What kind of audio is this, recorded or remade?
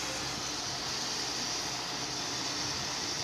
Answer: recorded